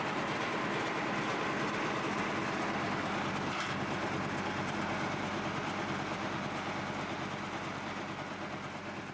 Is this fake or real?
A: real